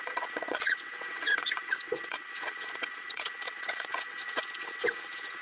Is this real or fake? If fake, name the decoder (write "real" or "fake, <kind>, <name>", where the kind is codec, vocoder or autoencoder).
fake, vocoder, WaveNeXt